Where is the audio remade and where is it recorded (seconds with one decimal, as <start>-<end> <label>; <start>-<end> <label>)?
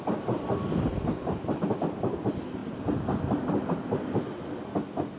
0.0-5.2 recorded